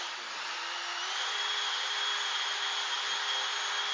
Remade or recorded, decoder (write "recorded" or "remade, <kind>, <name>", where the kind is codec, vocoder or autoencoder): recorded